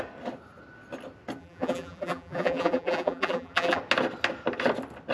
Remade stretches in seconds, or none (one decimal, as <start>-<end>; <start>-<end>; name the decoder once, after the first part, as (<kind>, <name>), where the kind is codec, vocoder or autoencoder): 1.4-3.8 (vocoder, BigVGAN v2)